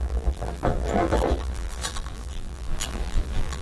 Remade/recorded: remade